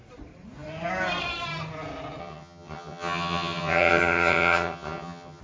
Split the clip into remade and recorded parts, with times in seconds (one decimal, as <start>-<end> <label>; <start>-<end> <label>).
0.0-2.2 recorded; 2.2-5.4 remade